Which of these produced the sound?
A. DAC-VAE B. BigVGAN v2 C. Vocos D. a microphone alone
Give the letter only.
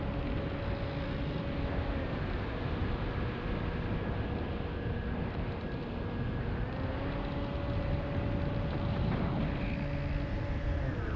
D